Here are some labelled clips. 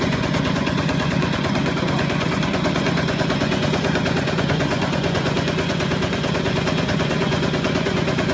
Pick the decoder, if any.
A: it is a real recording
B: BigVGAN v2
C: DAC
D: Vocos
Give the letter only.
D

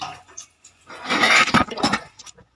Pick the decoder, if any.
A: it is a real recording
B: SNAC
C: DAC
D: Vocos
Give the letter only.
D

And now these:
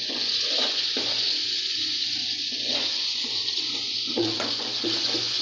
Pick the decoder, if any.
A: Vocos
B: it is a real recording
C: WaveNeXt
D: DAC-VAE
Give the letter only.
A